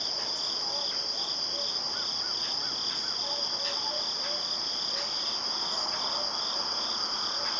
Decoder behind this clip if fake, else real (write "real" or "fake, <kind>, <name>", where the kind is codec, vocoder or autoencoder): real